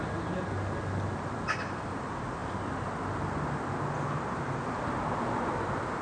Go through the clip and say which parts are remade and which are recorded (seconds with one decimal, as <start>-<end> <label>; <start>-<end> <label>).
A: 0.0-6.0 recorded